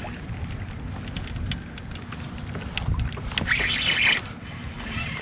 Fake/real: real